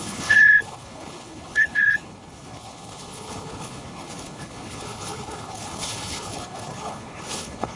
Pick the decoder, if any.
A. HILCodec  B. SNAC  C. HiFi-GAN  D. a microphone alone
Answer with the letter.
A